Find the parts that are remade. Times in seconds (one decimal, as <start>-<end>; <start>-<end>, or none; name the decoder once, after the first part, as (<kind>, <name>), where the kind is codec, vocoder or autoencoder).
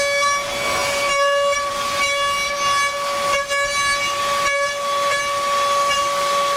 none